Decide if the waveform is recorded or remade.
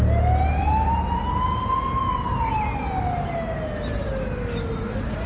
recorded